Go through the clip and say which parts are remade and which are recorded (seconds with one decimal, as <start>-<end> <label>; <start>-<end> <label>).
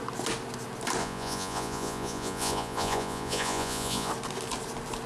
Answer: 0.0-1.0 recorded; 1.0-4.1 remade; 4.1-5.1 recorded